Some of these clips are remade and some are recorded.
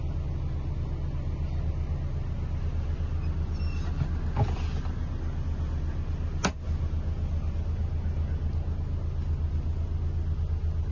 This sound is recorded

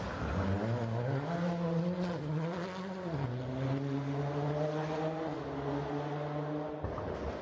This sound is recorded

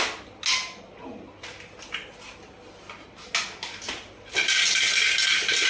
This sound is recorded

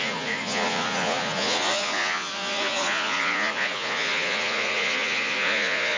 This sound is remade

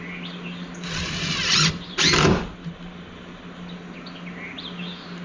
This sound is recorded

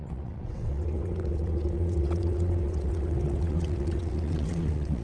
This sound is remade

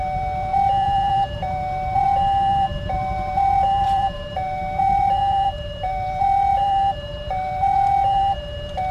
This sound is remade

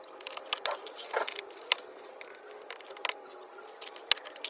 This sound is recorded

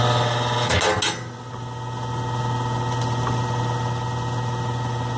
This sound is recorded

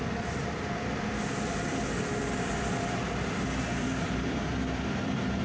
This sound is remade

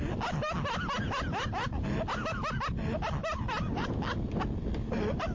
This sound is recorded